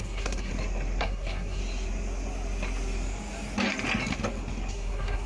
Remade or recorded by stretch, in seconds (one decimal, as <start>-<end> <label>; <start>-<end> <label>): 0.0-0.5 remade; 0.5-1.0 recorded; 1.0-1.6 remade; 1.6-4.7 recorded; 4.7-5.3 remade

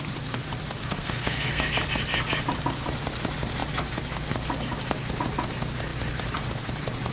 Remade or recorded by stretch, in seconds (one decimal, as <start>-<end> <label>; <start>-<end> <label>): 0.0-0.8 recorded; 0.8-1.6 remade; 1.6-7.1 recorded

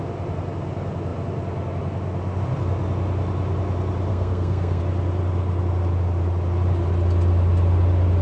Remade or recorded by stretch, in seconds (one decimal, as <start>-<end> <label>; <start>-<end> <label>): 0.0-4.1 recorded; 4.1-4.8 remade; 4.8-8.2 recorded

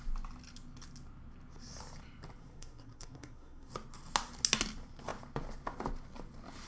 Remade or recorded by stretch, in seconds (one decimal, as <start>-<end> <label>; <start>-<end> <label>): 0.0-2.4 recorded; 2.4-3.7 remade; 3.7-6.7 recorded